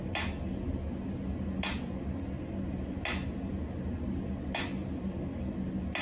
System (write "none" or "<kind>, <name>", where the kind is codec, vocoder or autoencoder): none